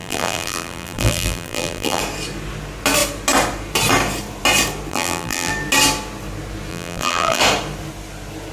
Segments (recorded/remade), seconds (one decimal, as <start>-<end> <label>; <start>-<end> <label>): 0.0-2.0 remade; 2.0-4.9 recorded; 4.9-5.5 remade; 5.5-6.7 recorded; 6.7-7.4 remade; 7.4-8.5 recorded